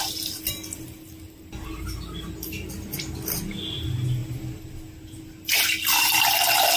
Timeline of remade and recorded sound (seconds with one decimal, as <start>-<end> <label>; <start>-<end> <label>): 0.0-6.8 recorded